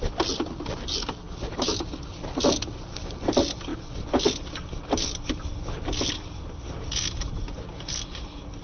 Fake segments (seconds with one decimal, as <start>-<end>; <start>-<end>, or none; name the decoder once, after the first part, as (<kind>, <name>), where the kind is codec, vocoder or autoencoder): none